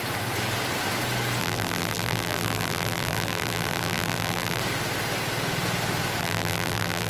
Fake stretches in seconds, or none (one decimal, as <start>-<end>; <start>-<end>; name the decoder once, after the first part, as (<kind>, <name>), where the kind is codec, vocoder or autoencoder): 1.4-4.6 (vocoder, BigVGAN v2); 6.2-7.1